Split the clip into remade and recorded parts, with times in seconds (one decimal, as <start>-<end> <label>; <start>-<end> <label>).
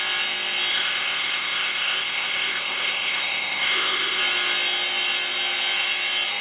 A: 0.0-0.7 recorded; 0.7-4.2 remade; 4.2-6.4 recorded